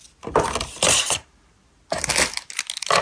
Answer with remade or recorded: recorded